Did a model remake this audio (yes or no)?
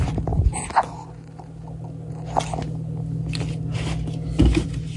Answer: no